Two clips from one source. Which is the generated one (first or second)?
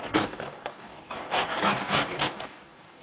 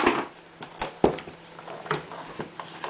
first